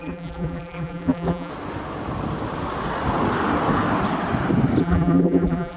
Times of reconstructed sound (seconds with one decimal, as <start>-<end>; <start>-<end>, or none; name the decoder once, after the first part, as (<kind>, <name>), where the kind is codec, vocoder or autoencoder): 0.0-1.5 (vocoder, BigVGAN v2); 4.8-5.8